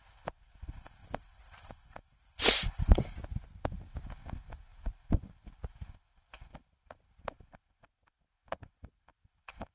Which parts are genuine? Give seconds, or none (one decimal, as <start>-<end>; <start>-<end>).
0.0-1.0; 1.7-4.7; 7.1-9.7